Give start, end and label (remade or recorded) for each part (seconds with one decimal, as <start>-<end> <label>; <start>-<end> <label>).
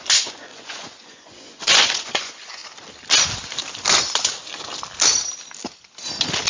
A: 0.0-2.6 remade; 2.6-6.5 recorded